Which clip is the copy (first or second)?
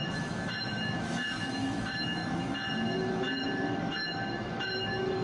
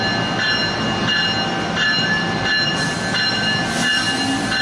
first